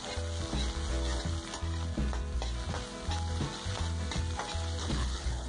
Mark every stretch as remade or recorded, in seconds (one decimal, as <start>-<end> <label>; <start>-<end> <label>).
0.0-4.8 recorded; 4.8-5.5 remade